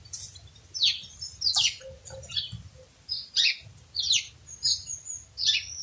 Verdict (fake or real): real